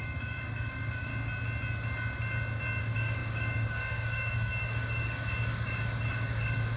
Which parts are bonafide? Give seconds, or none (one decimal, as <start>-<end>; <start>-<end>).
1.1-2.8